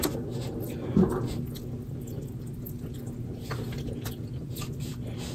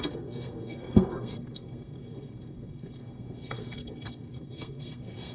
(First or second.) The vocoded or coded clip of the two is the second